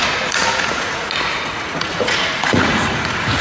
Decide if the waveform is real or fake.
fake